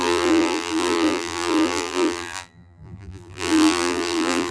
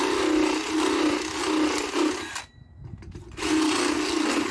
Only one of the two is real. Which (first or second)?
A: second